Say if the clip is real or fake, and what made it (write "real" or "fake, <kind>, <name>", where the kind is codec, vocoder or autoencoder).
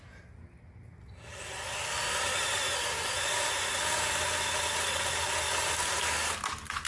real